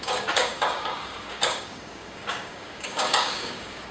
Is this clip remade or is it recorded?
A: remade